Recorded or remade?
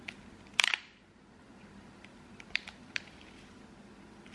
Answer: recorded